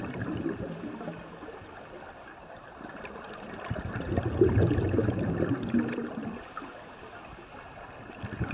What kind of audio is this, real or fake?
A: real